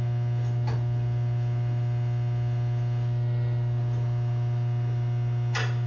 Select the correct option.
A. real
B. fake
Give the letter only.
A